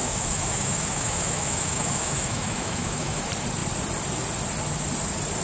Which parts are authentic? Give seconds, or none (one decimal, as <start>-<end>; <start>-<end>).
3.2-5.4